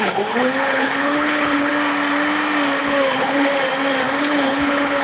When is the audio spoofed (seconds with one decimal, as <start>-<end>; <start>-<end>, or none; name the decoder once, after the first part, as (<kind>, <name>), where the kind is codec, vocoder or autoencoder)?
0.0-1.7 (codec, HILCodec); 2.8-3.5; 4.2-5.0